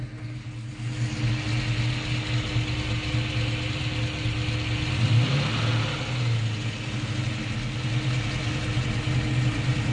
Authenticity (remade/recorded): recorded